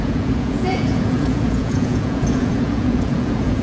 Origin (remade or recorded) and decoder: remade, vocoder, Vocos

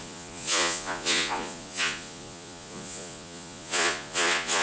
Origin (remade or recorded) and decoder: remade, vocoder, Vocos